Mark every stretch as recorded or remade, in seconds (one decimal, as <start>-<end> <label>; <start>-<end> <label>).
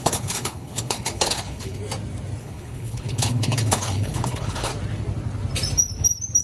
0.0-1.8 remade; 1.8-2.4 recorded; 2.4-4.7 remade; 4.7-6.4 recorded